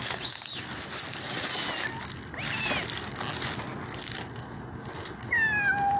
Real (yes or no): yes